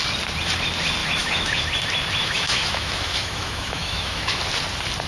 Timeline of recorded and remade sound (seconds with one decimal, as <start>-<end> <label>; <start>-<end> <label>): 0.0-1.0 recorded; 1.0-1.6 remade; 1.6-2.2 recorded; 2.2-4.4 remade; 4.4-5.1 recorded